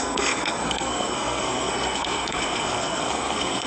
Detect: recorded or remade remade